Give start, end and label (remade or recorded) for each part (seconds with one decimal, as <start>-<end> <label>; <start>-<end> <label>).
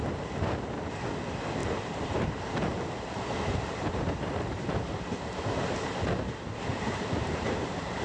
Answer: 0.0-1.6 recorded; 1.6-2.8 remade; 2.8-6.7 recorded; 6.7-8.0 remade